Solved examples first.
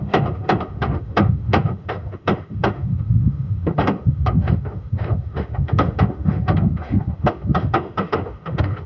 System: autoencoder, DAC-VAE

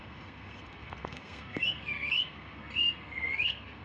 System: codec, SNAC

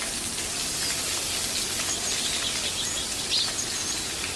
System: none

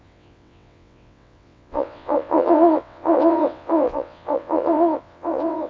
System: vocoder, WaveNeXt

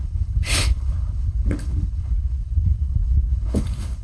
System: codec, HILCodec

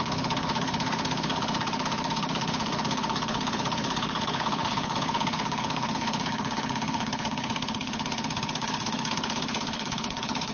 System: codec, HILCodec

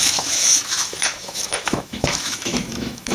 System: autoencoder, DAC-VAE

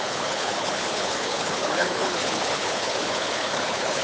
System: codec, HILCodec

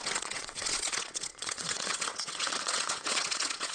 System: vocoder, WaveNeXt